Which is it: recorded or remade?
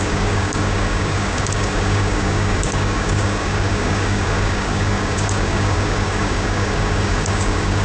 remade